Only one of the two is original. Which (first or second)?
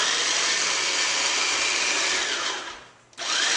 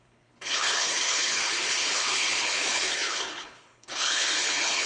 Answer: first